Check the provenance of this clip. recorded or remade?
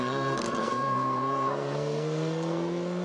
remade